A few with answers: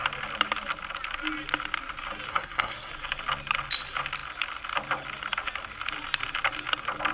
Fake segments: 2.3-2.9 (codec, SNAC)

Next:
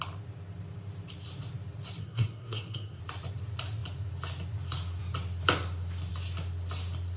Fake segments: 2.0-3.0 (codec, SNAC)